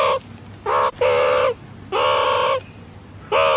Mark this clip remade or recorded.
recorded